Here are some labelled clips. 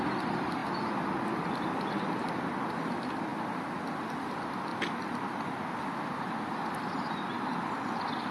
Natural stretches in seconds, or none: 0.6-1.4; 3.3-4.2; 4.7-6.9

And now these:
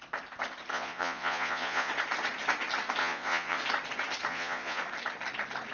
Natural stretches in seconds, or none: 0.0-0.7; 1.9-3.0; 3.6-4.3; 4.8-5.7

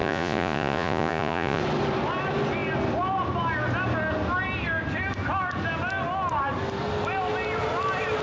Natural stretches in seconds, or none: 1.6-8.2

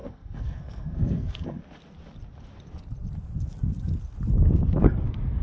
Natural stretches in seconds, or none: 1.6-4.8

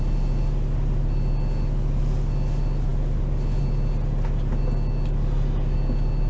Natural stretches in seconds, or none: 0.0-6.3